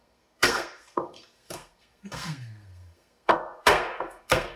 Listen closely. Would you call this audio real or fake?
fake